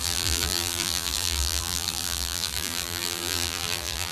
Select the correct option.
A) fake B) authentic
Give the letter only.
A